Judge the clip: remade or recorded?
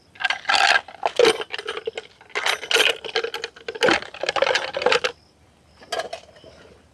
recorded